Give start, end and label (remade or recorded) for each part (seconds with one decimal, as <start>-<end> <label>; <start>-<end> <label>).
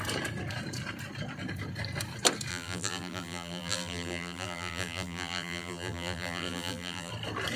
0.0-2.5 recorded; 2.5-7.1 remade; 7.1-7.6 recorded